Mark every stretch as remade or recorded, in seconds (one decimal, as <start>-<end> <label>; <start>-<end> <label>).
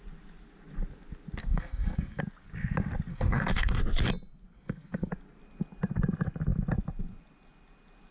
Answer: 0.0-1.4 recorded; 1.4-2.2 remade; 2.2-3.1 recorded; 3.1-3.8 remade; 3.8-4.5 recorded; 4.5-5.1 remade; 5.1-8.1 recorded